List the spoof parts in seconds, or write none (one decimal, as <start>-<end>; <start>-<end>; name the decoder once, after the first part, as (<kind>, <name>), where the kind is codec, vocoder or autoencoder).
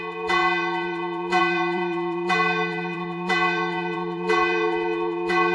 0.0-5.5 (vocoder, BigVGAN v2)